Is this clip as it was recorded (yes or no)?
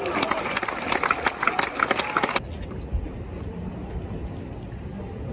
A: yes